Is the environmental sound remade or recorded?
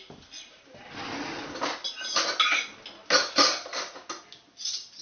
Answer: recorded